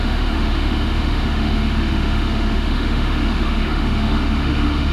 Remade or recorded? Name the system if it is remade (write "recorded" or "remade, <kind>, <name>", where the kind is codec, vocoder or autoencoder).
remade, autoencoder, DAC-VAE